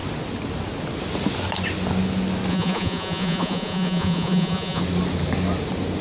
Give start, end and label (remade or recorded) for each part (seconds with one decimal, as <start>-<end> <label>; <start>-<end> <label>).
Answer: 0.0-2.5 recorded; 2.5-4.8 remade; 4.8-6.0 recorded